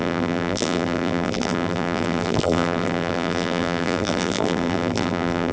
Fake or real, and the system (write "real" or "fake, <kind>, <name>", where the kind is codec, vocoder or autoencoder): fake, vocoder, BigVGAN v2